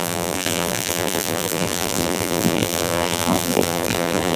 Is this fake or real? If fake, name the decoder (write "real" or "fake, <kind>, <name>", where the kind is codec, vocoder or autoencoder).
fake, vocoder, BigVGAN v2